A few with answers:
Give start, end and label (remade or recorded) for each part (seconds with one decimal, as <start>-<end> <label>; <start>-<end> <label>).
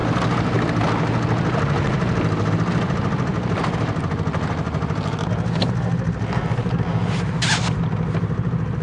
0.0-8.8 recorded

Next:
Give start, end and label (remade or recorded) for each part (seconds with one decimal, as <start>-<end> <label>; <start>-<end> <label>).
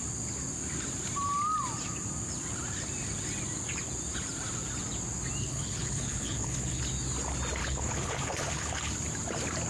0.0-5.4 recorded; 5.4-6.8 remade; 6.8-7.6 recorded; 7.6-8.9 remade; 8.9-9.7 recorded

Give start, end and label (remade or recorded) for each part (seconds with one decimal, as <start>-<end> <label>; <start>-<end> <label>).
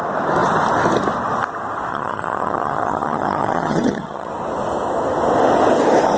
0.0-1.9 recorded; 1.9-4.3 remade; 4.3-6.2 recorded